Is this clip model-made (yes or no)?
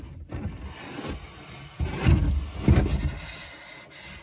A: no